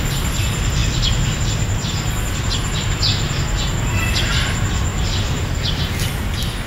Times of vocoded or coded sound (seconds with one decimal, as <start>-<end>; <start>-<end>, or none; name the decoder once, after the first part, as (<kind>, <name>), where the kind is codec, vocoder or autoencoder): 4.9-5.8 (vocoder, BigVGAN v2)